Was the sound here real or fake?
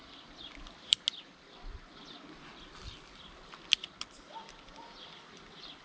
real